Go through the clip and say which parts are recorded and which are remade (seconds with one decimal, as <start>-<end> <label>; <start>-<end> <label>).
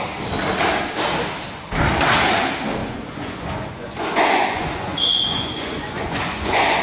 0.0-2.8 recorded; 2.8-6.8 remade